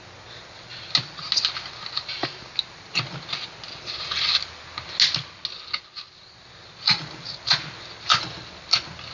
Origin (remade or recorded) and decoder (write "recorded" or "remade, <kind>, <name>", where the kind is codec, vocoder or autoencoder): recorded